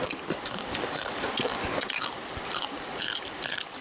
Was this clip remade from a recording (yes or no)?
no